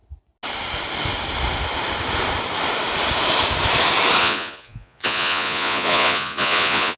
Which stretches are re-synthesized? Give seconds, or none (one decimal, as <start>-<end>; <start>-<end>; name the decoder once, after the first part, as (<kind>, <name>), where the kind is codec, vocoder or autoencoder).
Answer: 4.2-7.0 (vocoder, Vocos)

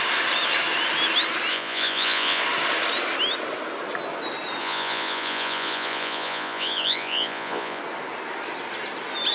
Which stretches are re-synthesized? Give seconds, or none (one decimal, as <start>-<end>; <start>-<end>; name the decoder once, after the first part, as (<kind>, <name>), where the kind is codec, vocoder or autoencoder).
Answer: 1.5-2.4 (vocoder, Vocos); 4.6-7.8

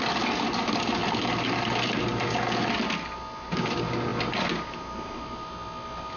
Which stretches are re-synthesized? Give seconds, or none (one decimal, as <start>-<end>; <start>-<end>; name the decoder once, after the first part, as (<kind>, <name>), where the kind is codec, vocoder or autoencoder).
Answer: none

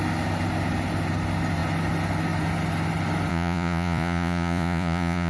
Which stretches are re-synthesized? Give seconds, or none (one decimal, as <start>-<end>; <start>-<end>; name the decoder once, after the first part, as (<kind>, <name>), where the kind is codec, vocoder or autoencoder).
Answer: 3.3-5.3 (vocoder, Vocos)

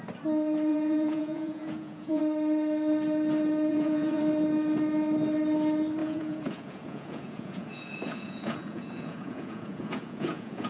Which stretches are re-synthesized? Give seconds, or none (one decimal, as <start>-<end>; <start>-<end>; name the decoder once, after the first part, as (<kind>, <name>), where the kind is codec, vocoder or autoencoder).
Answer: 0.7-2.2 (vocoder, Vocos); 3.7-4.2; 6.0-10.7

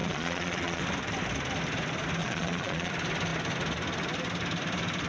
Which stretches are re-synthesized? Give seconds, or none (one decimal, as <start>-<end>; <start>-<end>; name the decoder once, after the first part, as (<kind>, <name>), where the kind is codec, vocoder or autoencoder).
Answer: 0.0-0.8 (vocoder, Vocos); 2.2-2.9

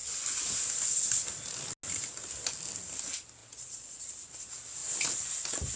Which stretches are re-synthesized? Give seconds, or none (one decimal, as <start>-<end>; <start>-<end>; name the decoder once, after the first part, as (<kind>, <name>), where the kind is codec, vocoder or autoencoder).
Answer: 3.4-4.0 (vocoder, Vocos)

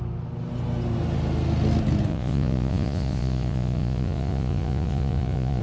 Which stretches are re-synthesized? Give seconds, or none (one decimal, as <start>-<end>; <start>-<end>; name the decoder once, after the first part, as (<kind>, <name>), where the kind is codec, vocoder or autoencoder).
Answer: 2.1-5.6 (vocoder, Vocos)